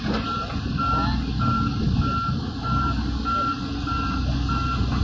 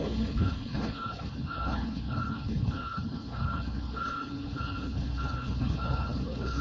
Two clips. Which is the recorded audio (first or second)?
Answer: first